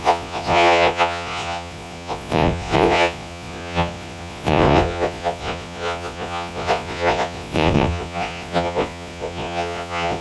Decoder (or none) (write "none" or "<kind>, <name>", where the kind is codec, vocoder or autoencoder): vocoder, Vocos